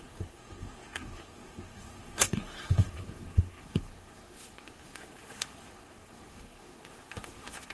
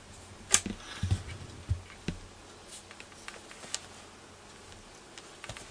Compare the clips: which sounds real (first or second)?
second